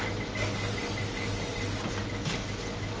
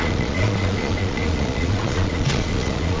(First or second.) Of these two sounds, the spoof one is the second